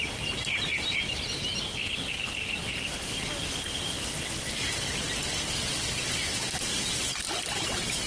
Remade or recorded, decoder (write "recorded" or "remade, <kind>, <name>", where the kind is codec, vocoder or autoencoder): recorded